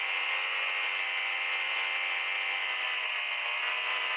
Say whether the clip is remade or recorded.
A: remade